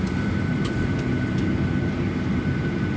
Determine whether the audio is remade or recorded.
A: recorded